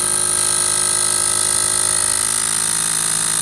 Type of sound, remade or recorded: recorded